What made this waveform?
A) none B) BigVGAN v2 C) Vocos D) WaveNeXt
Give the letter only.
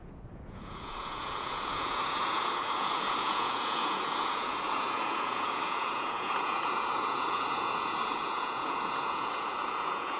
C